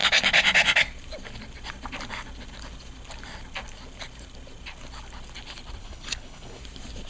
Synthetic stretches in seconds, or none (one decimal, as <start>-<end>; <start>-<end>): 5.8-6.6

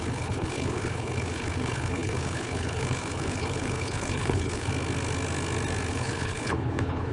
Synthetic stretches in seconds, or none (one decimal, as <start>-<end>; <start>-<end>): 0.0-4.7; 5.9-7.1

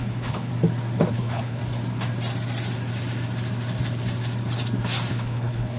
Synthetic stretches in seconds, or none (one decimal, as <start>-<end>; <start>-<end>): 0.0-0.5; 1.1-1.6; 5.1-5.8

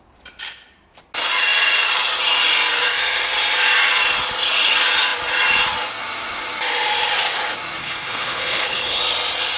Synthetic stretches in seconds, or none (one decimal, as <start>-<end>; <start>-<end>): 7.8-9.0

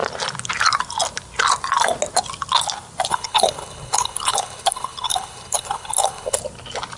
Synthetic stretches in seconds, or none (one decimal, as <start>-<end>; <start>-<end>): 3.1-6.4

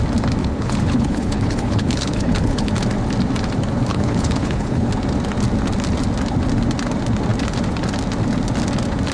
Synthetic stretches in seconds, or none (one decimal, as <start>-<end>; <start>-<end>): 0.4-2.7; 3.9-4.9